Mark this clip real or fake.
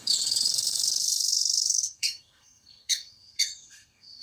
fake